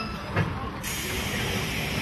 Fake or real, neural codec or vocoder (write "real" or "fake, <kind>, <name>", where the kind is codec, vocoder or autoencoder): real